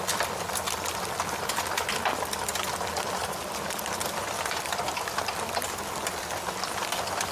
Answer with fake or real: real